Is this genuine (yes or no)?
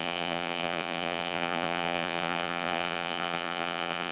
no